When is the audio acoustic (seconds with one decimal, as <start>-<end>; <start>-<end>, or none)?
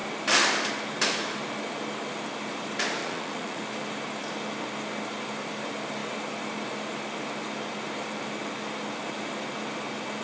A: 0.0-3.0; 3.6-10.2